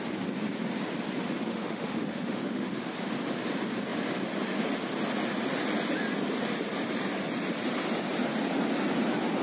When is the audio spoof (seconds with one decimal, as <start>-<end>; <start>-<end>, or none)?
1.5-3.1